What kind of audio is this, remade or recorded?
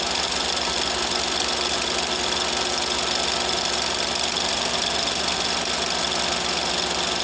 recorded